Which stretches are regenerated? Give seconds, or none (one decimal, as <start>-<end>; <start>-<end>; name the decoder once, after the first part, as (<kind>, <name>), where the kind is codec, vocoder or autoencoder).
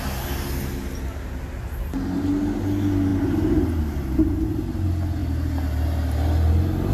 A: none